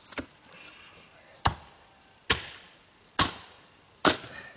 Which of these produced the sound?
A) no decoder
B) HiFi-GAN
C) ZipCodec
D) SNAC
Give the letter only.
A